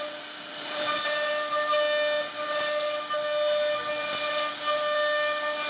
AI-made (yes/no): no